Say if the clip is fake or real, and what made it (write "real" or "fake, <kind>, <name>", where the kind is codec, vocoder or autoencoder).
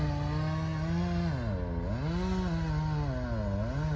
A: real